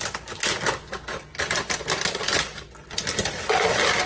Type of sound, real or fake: real